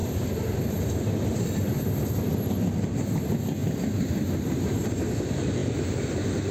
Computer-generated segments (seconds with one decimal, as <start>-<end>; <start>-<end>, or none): 3.6-4.9